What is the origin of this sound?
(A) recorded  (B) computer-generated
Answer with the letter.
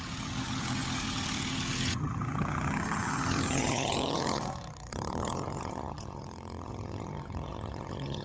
B